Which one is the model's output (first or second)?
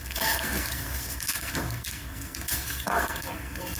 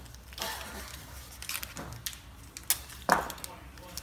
first